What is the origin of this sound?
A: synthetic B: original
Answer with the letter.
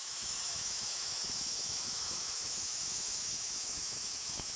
A